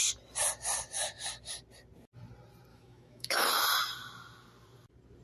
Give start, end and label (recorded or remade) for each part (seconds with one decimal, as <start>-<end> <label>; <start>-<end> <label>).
0.0-2.7 recorded; 2.7-3.5 remade; 3.5-5.2 recorded